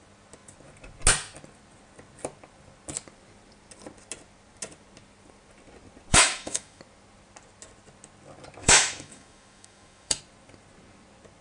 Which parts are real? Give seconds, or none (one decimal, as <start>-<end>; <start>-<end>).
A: 0.0-6.1; 6.8-8.6; 10.2-11.4